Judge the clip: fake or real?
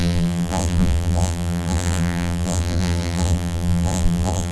fake